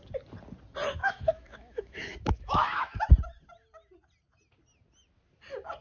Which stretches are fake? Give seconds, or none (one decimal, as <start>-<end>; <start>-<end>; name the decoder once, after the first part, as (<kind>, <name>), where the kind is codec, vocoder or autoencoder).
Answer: 1.0-3.1 (autoencoder, DAC-VAE)

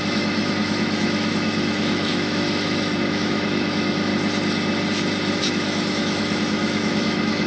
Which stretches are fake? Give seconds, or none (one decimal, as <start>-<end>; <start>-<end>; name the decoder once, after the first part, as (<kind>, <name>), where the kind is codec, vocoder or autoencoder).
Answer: 0.0-4.1 (autoencoder, DAC-VAE); 5.3-7.5

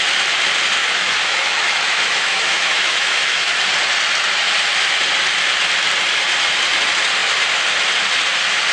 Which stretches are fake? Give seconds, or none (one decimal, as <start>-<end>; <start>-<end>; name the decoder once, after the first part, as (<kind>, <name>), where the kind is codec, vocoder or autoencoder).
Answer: 0.8-3.5 (autoencoder, DAC-VAE)